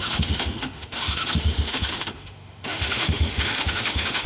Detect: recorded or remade remade